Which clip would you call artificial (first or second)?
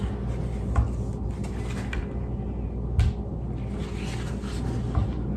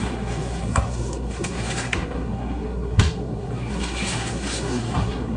second